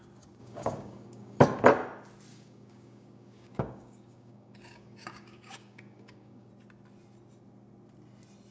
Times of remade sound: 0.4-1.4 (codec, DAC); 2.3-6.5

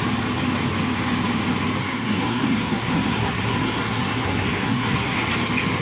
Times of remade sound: 1.8-5.3 (codec, SNAC)

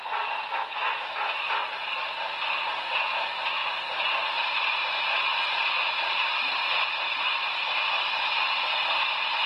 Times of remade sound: none

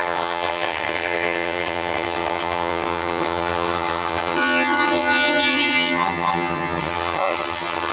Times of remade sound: 0.0-7.9 (vocoder, HiFi-GAN)

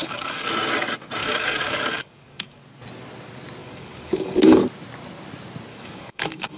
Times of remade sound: 0.0-0.5 (codec, DAC); 1.2-2.6; 3.6-4.6; 5.7-6.6

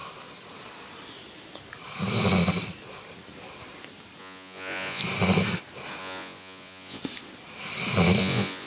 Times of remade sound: 4.2-5.0 (vocoder, Vocos); 6.0-7.0; 8.2-8.7